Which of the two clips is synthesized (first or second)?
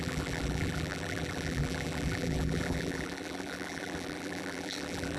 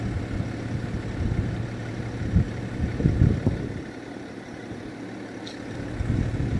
first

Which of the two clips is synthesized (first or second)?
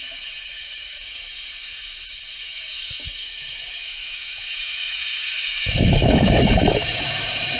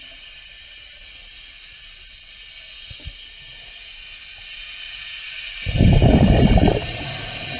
first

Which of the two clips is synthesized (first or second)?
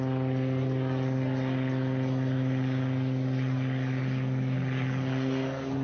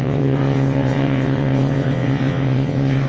second